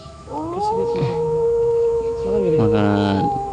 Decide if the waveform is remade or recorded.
remade